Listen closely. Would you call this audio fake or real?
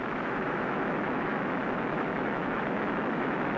fake